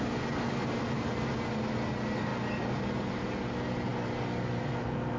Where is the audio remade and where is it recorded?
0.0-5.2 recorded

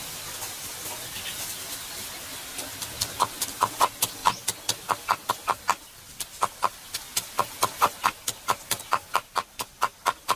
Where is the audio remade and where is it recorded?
0.0-10.4 recorded

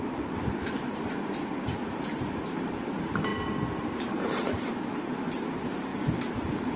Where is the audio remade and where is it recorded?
0.0-5.9 remade; 5.9-6.8 recorded

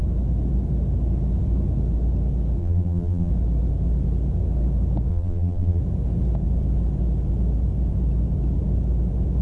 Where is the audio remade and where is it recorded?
0.0-2.6 recorded; 2.6-3.3 remade; 3.3-5.1 recorded; 5.1-5.8 remade; 5.8-9.4 recorded

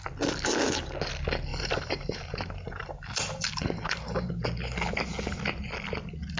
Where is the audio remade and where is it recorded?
0.0-1.5 recorded; 1.5-4.3 remade; 4.3-6.4 recorded